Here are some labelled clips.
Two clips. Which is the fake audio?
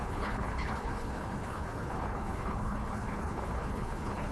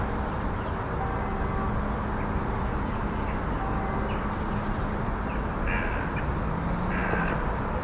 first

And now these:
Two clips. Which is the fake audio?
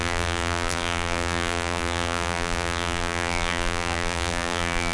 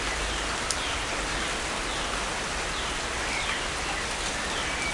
first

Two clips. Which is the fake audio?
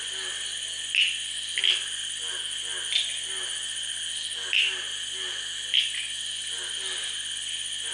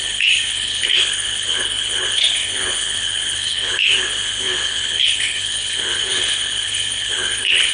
second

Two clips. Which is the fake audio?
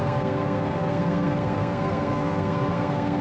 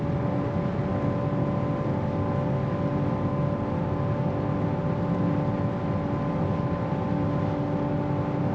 first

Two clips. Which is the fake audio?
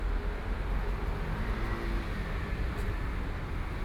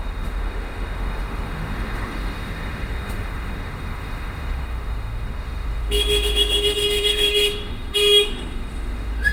second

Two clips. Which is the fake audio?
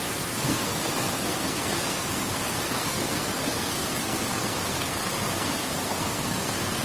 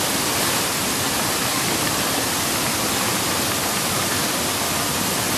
first